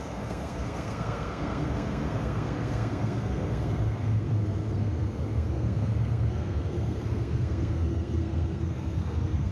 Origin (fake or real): fake